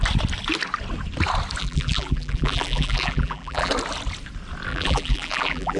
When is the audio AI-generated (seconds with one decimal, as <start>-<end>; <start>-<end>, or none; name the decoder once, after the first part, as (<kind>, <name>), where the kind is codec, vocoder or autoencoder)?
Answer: 1.6-3.7 (vocoder, BigVGAN v2); 4.7-5.8